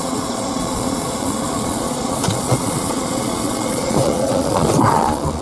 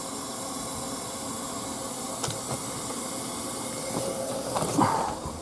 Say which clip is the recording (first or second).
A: second